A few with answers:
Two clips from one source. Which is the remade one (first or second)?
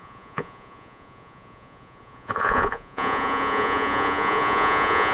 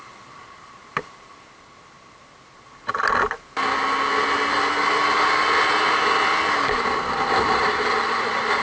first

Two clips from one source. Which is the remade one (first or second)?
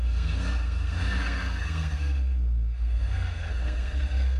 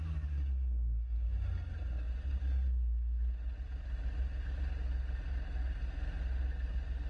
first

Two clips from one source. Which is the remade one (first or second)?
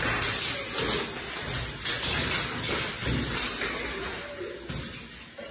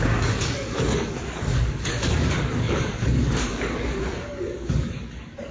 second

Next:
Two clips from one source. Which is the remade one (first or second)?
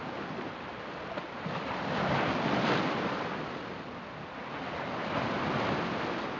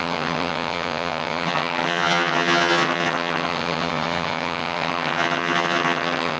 second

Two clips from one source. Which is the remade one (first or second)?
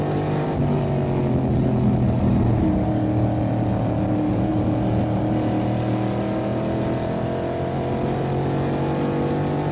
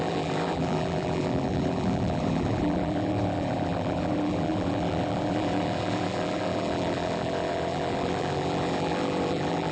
second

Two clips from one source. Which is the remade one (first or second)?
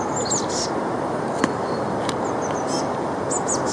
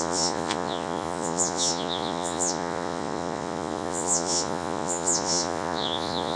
second